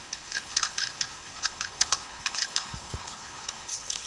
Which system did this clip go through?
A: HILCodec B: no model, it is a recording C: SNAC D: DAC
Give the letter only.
A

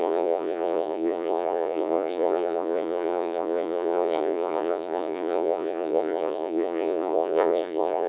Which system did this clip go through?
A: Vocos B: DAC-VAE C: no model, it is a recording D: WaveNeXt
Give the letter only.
A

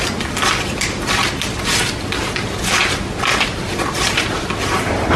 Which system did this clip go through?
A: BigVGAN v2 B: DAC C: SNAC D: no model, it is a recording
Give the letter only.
D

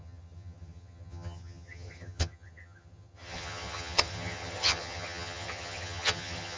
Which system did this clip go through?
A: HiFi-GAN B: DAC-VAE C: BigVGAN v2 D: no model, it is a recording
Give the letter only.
A